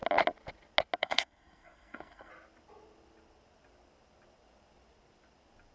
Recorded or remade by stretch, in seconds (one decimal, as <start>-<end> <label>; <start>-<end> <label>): 0.0-1.0 recorded; 1.0-2.3 remade; 2.3-5.7 recorded